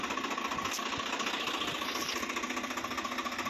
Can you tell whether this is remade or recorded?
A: recorded